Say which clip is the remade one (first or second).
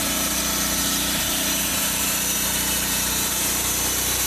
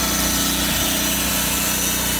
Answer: first